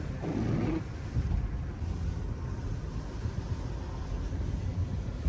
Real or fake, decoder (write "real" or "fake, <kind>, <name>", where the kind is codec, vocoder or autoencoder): real